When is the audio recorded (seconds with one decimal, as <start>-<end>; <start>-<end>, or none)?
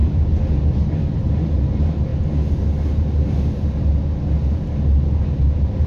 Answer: 0.0-5.9